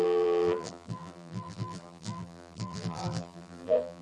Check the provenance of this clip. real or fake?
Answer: fake